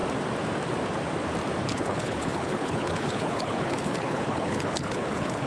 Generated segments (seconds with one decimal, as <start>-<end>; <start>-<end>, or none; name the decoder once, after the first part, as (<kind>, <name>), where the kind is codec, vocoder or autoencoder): 1.7-5.5 (codec, HILCodec)